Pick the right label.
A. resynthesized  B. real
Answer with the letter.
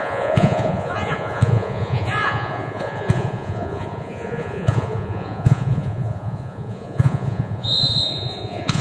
A